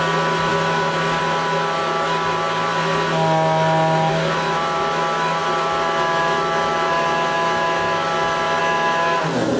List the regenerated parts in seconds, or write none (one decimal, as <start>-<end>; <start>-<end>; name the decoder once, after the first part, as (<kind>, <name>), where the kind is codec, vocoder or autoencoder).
none